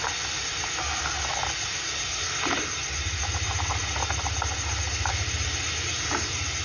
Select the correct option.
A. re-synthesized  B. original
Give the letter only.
B